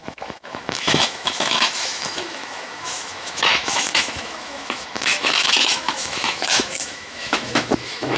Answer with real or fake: fake